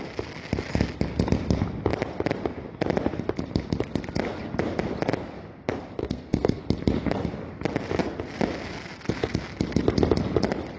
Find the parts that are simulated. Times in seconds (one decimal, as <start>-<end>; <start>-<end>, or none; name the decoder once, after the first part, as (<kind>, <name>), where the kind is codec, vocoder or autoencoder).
6.0-6.6 (codec, SNAC)